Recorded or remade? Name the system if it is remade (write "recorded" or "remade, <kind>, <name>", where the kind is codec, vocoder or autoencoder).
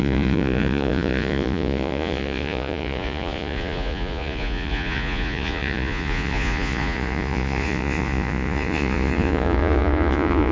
remade, vocoder, Vocos